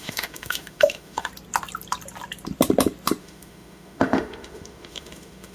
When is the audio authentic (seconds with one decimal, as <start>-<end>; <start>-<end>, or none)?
1.3-3.2